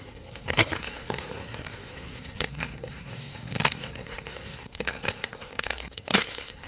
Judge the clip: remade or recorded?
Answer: remade